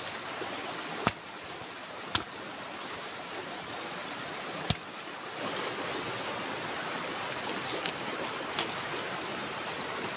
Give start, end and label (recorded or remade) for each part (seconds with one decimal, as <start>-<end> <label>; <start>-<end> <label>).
0.0-10.2 recorded